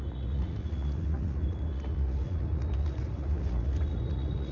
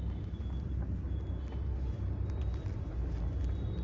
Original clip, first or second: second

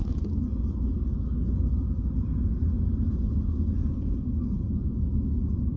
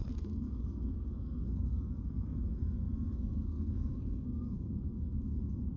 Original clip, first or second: first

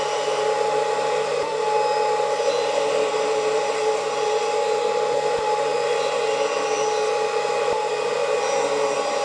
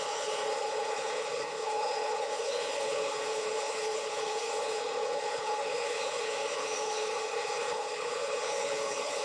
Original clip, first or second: first